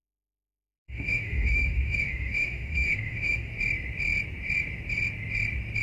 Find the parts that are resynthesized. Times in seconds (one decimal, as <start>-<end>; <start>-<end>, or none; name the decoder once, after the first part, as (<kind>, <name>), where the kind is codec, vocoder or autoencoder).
0.0-3.5 (autoencoder, DAC-VAE)